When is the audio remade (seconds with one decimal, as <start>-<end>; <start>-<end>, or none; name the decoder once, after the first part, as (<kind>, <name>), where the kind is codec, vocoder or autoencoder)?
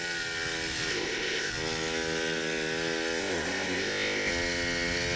0.9-1.5 (codec, ZipCodec); 3.2-4.3